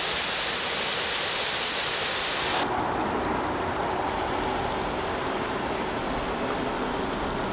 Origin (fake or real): real